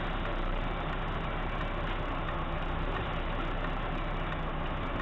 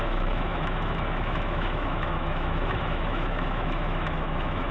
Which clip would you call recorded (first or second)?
first